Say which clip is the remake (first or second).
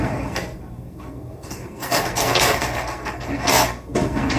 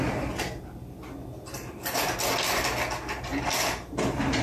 first